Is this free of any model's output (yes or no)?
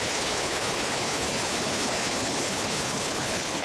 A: no